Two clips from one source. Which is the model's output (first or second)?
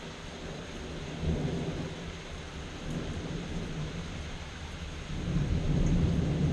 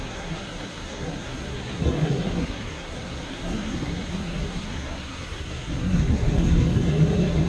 second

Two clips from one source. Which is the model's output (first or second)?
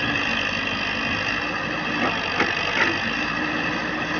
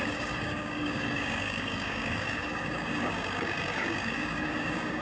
second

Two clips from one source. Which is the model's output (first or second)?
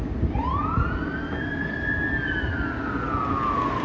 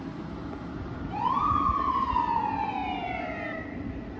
second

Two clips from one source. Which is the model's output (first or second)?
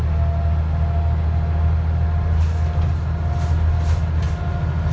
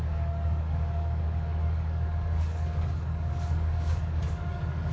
second